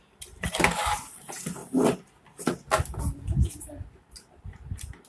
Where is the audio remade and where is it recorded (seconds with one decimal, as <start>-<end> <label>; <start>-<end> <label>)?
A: 0.0-1.6 remade; 1.6-5.1 recorded